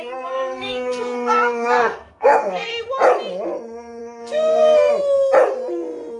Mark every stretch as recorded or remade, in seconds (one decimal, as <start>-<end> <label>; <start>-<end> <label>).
0.0-2.7 remade; 2.7-4.0 recorded; 4.0-4.9 remade; 4.9-6.2 recorded